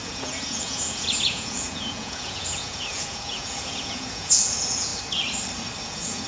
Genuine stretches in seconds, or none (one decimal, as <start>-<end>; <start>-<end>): 4.9-5.8

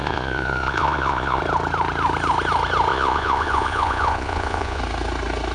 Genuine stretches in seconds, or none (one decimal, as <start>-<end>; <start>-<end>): 1.4-2.9; 4.8-5.5

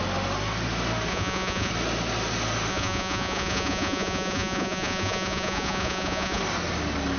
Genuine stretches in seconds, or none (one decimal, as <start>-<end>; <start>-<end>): 0.0-1.1; 1.7-2.7; 6.4-7.2